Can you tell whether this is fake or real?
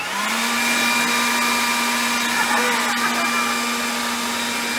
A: real